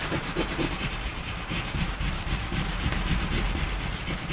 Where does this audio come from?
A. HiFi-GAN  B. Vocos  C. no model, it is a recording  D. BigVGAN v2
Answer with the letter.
D